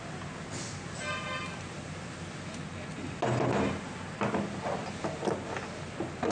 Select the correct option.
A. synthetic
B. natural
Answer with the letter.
B